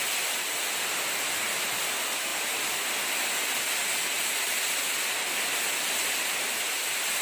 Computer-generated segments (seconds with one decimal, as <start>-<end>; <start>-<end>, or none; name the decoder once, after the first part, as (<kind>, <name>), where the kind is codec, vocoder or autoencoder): none